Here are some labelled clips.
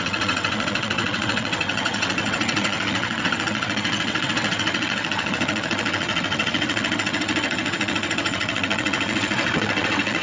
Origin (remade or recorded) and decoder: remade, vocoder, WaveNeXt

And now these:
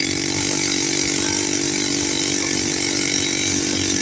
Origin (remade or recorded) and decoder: recorded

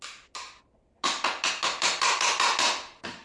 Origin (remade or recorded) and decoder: recorded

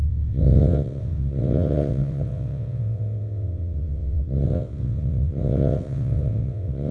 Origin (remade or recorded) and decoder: remade, vocoder, WaveNeXt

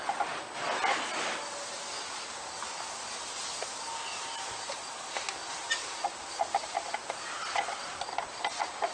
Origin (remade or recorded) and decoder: recorded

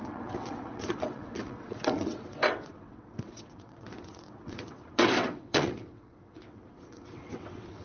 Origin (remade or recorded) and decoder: remade, vocoder, WaveNeXt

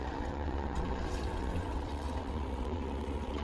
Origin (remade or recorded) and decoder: remade, vocoder, WaveNeXt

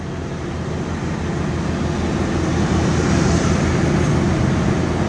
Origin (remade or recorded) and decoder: recorded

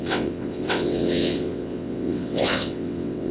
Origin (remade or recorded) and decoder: remade, vocoder, WaveNeXt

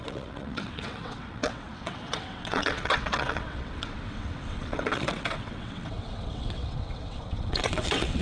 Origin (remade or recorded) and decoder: remade, vocoder, WaveNeXt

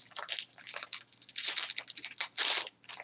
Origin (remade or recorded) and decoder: recorded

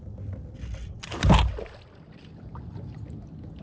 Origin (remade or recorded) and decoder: recorded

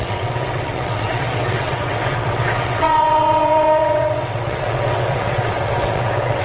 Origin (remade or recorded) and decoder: remade, vocoder, WaveNeXt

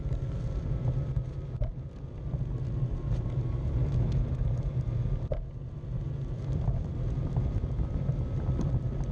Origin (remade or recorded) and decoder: recorded